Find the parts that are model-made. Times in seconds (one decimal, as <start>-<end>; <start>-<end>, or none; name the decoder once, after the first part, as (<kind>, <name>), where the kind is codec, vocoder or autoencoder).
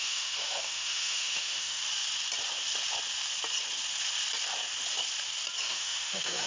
0.0-1.8 (autoencoder, DAC-VAE); 5.7-6.5